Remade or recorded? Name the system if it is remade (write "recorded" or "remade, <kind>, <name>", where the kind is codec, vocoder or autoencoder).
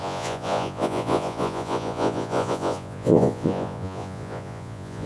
remade, vocoder, Vocos